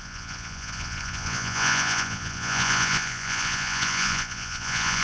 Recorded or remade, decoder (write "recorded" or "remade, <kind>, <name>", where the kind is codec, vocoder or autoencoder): remade, vocoder, Vocos